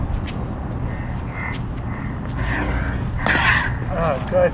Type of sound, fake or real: real